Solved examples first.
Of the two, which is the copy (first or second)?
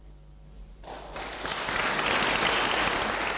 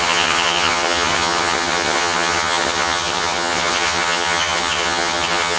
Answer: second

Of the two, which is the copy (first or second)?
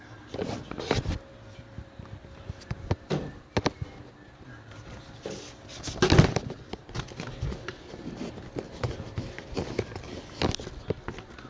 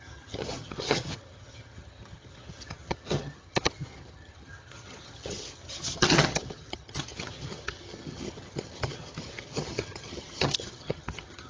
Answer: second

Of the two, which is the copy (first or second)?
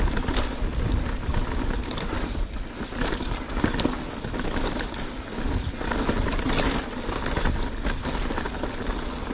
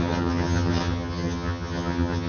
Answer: second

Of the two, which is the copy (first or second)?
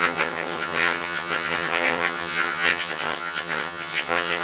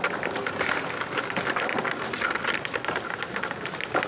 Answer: first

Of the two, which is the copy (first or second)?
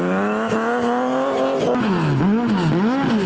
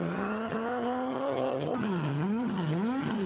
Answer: second